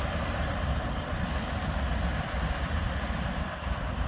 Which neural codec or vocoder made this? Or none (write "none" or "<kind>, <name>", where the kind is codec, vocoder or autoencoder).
none